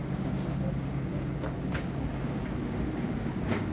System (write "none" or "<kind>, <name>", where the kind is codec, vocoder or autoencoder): codec, DAC